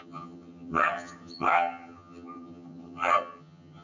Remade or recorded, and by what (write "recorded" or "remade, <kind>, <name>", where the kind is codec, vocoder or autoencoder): remade, vocoder, HiFi-GAN